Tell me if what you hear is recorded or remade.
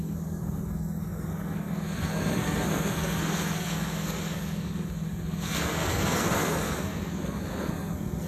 remade